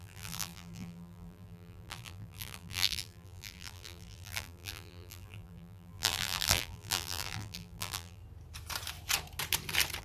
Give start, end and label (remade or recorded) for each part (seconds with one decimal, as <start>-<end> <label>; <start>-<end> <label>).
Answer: 0.0-8.2 remade; 8.2-10.0 recorded